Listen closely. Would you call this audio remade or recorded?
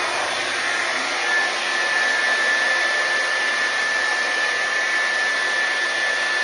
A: recorded